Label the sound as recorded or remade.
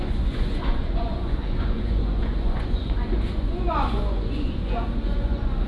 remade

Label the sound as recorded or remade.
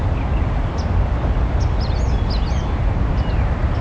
recorded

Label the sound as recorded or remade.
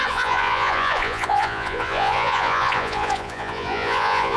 remade